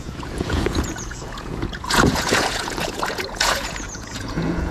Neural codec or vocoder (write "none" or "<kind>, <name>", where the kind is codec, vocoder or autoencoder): vocoder, Vocos